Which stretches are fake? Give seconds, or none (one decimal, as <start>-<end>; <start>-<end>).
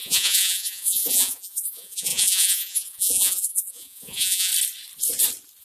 0.0-4.5